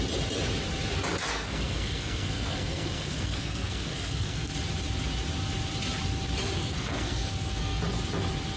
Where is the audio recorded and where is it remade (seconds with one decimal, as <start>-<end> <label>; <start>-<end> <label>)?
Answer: 0.0-1.3 recorded; 1.3-4.5 remade; 4.5-6.6 recorded; 6.6-7.8 remade; 7.8-8.6 recorded